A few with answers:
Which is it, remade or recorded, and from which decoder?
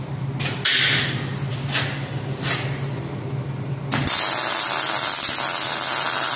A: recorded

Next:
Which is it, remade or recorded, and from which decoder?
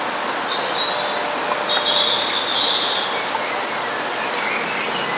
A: recorded